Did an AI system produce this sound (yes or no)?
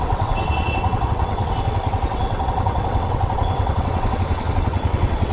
yes